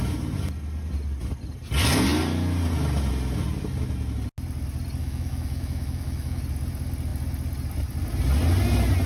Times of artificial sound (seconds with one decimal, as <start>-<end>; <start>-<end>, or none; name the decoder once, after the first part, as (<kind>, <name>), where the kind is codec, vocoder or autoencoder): 5.0-6.4 (autoencoder, DAC-VAE)